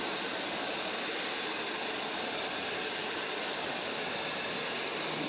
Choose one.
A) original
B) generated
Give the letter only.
A